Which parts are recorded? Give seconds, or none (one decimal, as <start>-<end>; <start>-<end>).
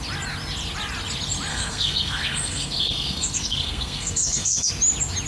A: 0.0-1.5; 4.7-5.3